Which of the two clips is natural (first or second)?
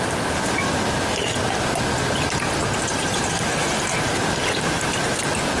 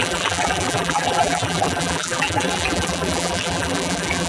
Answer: first